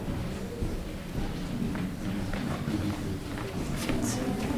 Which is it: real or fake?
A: real